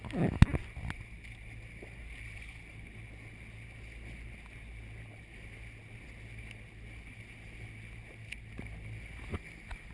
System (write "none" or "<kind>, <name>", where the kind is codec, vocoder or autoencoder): none